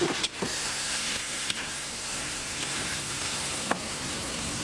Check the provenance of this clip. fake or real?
fake